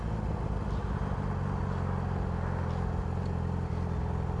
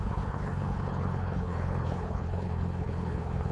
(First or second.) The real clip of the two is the first